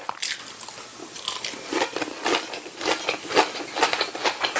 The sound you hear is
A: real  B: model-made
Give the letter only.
A